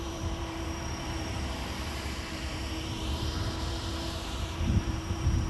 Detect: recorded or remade remade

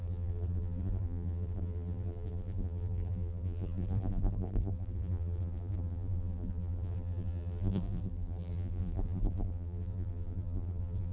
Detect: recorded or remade remade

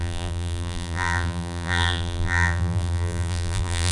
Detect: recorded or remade remade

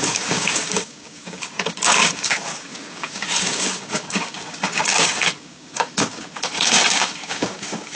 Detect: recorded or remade remade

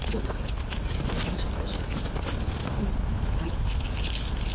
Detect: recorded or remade recorded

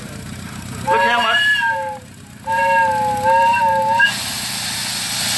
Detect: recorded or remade recorded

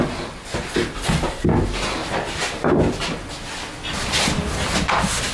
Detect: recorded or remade recorded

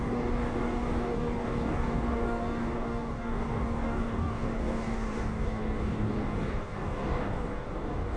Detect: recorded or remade remade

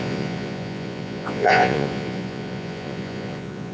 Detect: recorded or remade remade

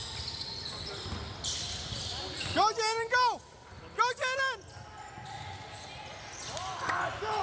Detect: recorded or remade recorded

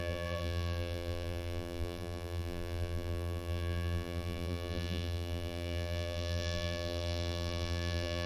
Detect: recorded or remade remade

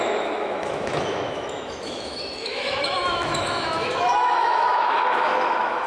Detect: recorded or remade remade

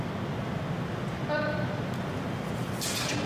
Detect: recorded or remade recorded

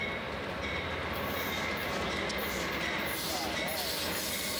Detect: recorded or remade remade